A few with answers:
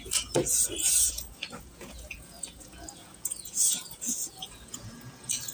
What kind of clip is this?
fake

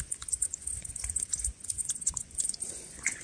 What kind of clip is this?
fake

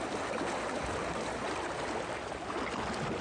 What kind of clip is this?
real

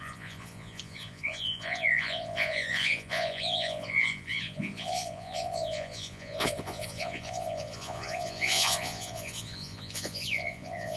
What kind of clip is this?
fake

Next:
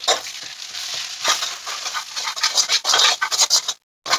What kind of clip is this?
real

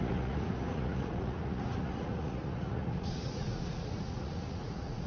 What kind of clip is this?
fake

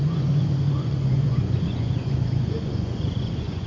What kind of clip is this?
fake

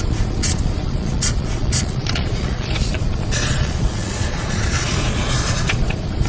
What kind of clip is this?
fake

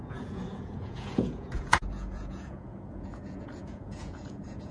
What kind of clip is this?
fake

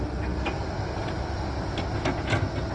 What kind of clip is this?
real